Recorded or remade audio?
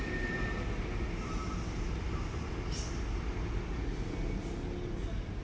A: recorded